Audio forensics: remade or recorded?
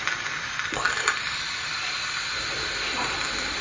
remade